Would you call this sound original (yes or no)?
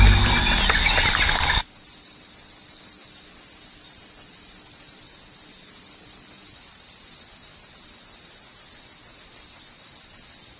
yes